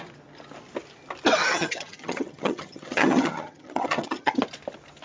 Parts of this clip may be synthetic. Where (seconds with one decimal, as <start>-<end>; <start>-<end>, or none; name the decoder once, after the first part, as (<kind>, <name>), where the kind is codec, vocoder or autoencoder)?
1.4-4.4 (vocoder, HiFi-GAN)